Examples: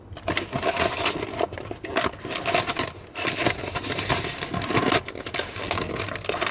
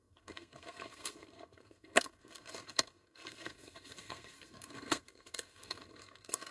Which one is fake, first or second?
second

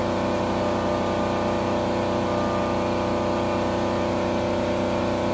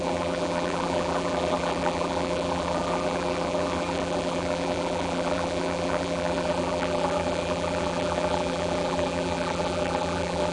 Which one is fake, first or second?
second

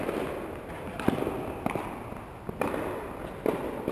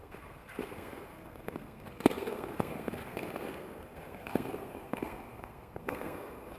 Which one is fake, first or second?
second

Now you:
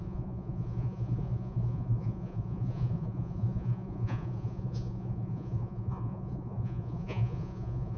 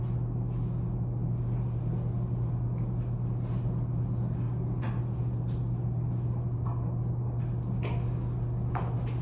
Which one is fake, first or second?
first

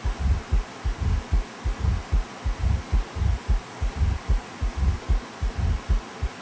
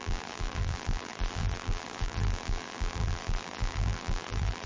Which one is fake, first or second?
second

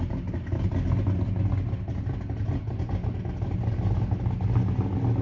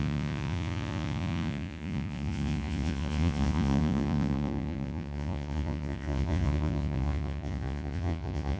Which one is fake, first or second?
second